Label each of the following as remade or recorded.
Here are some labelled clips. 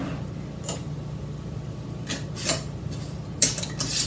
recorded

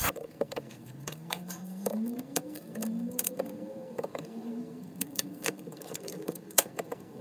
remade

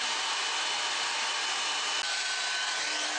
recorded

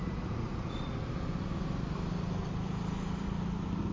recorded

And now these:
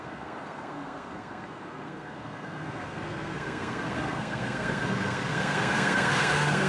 remade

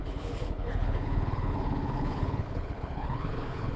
remade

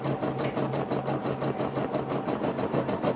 recorded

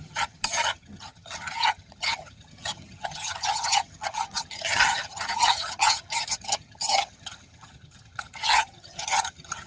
remade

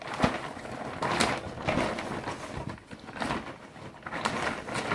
recorded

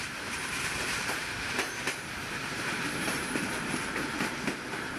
remade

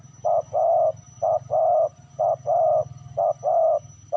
recorded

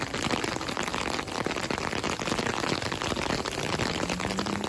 recorded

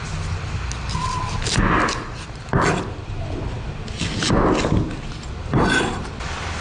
recorded